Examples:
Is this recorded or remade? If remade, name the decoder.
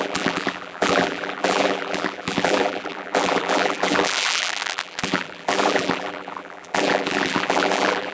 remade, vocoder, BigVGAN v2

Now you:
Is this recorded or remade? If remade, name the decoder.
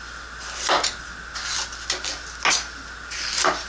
recorded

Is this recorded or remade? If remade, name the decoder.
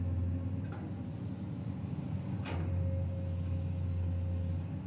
recorded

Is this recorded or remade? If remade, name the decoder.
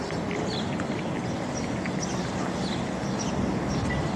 recorded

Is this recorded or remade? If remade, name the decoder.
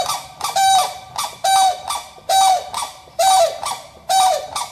remade, vocoder, BigVGAN v2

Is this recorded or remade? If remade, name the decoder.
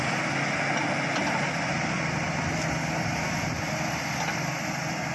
recorded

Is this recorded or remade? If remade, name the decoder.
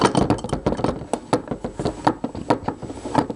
recorded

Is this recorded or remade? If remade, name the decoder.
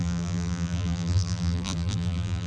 remade, vocoder, BigVGAN v2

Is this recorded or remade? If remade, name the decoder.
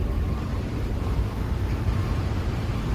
remade, vocoder, BigVGAN v2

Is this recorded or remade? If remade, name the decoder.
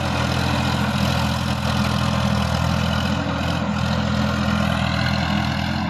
recorded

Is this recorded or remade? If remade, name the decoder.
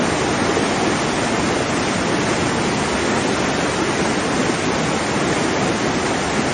recorded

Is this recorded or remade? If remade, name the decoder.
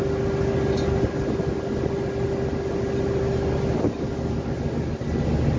recorded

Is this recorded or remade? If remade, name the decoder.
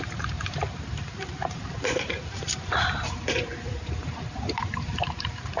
remade, vocoder, BigVGAN v2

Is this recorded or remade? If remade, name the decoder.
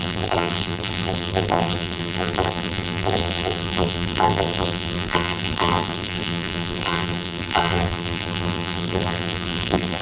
remade, vocoder, BigVGAN v2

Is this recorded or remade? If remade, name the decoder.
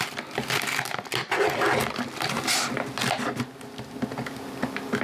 recorded